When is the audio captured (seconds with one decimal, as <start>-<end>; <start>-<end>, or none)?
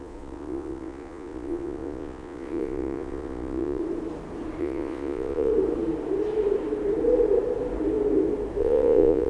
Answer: 3.8-4.6; 5.5-8.6